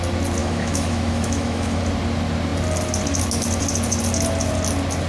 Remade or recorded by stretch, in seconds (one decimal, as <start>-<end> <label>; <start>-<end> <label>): 0.0-0.4 recorded; 0.4-1.8 remade; 1.8-5.1 recorded